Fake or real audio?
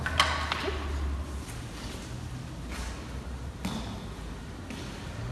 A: real